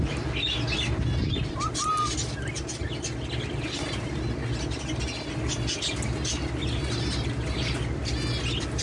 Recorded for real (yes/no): yes